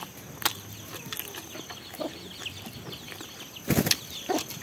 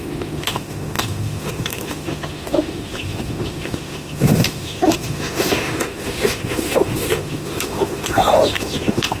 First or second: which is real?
first